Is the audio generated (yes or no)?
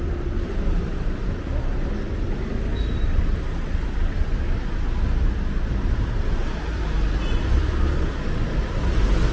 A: no